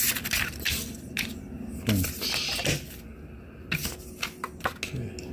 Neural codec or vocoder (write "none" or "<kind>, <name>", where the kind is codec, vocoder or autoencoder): none